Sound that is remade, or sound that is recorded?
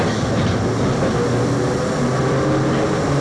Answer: recorded